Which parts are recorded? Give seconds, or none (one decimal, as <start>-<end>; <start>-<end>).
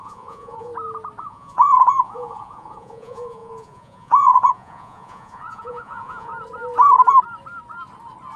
0.7-1.2; 6.3-8.4